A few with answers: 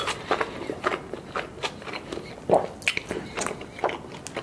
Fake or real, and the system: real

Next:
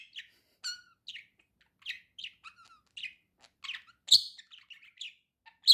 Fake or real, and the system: real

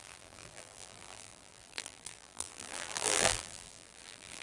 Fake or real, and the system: fake, vocoder, BigVGAN v2